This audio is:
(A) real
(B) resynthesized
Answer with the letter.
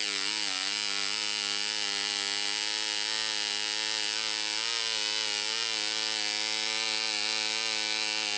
A